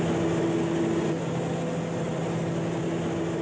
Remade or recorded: recorded